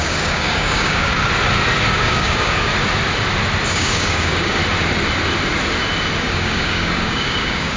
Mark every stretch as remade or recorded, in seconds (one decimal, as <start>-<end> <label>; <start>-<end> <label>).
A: 0.0-1.1 remade; 1.1-1.9 recorded; 1.9-2.7 remade; 2.7-3.7 recorded; 3.7-4.6 remade; 4.6-6.2 recorded; 6.2-7.8 remade